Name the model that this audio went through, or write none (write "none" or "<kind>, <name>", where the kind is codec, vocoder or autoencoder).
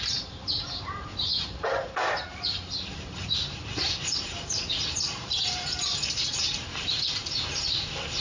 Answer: vocoder, BigVGAN v2